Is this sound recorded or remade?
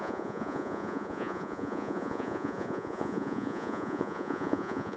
remade